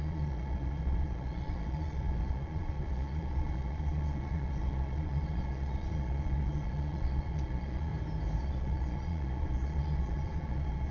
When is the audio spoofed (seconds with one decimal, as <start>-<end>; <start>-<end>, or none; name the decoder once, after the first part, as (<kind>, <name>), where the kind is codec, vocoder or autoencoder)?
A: 0.0-7.9 (vocoder, Vocos); 8.4-10.9